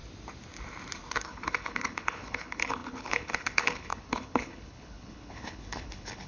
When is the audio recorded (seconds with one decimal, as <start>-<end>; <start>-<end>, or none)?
0.0-1.2